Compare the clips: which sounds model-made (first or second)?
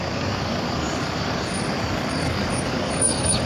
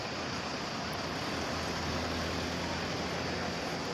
first